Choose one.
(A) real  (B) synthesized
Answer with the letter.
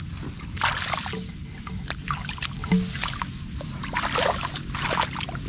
A